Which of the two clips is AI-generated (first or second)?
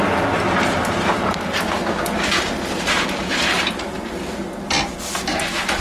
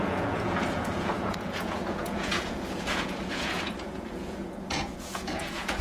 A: second